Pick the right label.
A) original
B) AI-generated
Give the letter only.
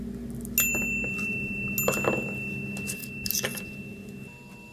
A